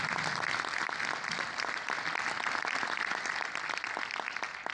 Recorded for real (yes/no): yes